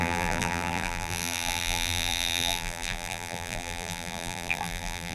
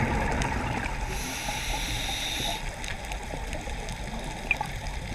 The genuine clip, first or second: second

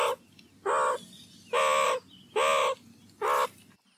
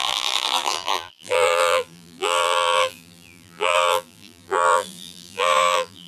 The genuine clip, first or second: first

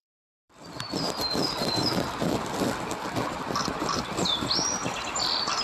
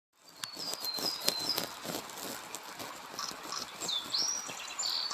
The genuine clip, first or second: second